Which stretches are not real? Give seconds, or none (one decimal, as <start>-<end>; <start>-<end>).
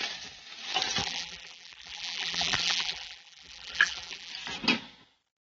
1.0-4.3